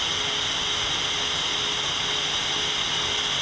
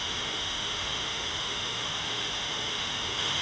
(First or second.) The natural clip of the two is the first